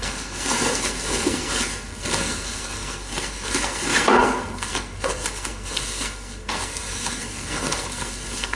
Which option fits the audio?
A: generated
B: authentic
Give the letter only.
A